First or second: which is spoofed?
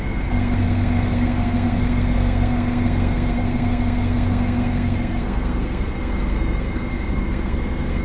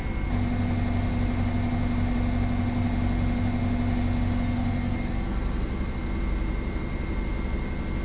first